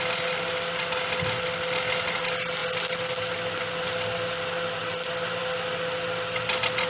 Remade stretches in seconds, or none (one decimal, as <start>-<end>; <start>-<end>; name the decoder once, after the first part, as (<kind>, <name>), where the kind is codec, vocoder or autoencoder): none

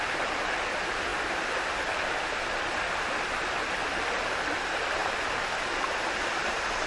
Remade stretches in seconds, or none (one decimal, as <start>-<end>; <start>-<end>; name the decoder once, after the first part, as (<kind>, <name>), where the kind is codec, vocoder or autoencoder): none

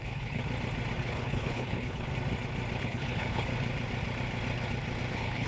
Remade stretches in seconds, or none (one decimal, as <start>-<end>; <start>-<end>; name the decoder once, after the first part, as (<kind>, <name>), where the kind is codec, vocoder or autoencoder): 0.0-0.4 (codec, HILCodec); 1.0-2.1; 2.8-3.5; 5.1-5.5

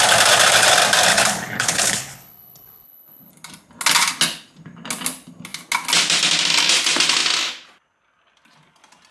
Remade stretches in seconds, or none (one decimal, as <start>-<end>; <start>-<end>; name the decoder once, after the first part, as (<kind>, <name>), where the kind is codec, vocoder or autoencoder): 1.1-3.3 (codec, HILCodec)

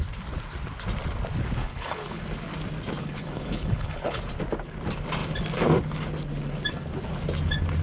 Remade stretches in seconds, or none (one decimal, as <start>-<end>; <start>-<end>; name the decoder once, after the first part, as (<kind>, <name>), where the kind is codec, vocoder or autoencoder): 1.6-2.2 (codec, HILCodec); 3.0-4.2